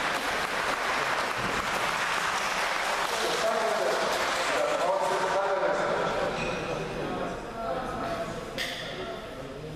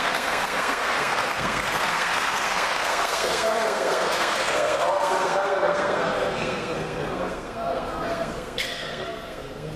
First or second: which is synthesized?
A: second